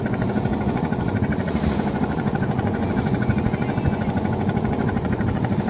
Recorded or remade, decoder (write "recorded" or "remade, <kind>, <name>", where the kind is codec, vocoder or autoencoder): remade, vocoder, Vocos